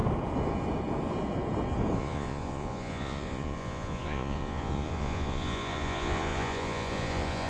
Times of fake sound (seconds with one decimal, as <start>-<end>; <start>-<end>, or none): 2.0-7.5